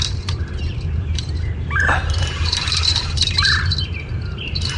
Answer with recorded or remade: remade